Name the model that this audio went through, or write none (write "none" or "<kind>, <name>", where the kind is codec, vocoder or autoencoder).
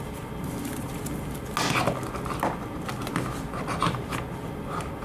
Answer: none